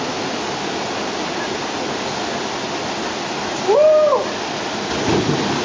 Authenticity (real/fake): real